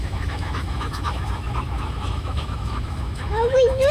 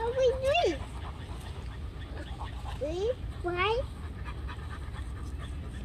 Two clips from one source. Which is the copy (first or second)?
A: first